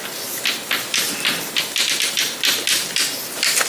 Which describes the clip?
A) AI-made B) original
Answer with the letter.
B